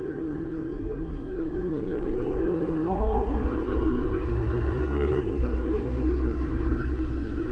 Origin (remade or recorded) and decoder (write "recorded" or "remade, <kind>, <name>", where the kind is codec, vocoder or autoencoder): remade, codec, SNAC